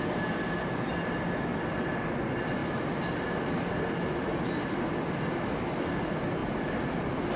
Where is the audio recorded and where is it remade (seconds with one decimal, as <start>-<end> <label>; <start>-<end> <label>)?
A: 0.0-7.4 recorded